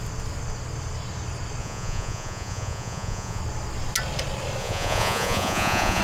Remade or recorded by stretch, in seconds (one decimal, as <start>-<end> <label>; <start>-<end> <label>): 0.0-1.6 recorded; 1.6-3.4 remade; 3.4-4.6 recorded; 4.6-6.0 remade